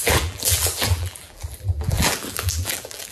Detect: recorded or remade remade